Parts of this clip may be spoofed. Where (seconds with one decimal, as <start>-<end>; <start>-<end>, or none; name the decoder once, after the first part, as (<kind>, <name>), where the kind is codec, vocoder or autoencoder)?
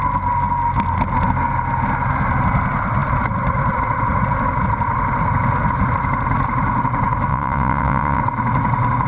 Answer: 7.3-8.2 (vocoder, WaveNeXt)